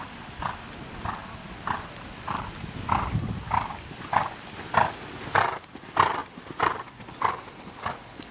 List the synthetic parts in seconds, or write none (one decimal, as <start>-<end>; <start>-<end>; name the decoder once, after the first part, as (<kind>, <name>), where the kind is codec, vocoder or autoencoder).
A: none